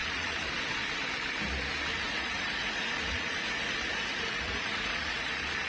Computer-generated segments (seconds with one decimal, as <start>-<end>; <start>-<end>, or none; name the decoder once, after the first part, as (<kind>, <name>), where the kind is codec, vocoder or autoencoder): 0.0-0.5 (vocoder, Vocos); 1.9-5.3